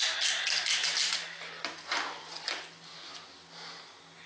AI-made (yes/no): no